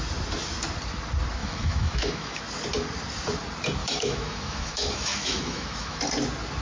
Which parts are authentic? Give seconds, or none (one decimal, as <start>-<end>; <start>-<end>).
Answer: 0.0-1.4; 2.4-3.8; 6.0-6.6